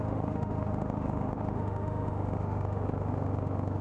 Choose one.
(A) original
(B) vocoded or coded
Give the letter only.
B